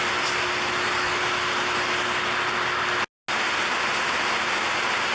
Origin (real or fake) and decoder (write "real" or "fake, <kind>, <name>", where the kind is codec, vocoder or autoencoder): real